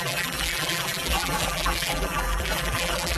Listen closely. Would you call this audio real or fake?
fake